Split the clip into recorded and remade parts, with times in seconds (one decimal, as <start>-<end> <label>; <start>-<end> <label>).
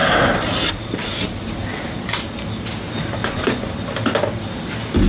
0.0-3.2 recorded; 3.2-3.7 remade; 3.7-5.1 recorded